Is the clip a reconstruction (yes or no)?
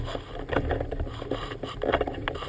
no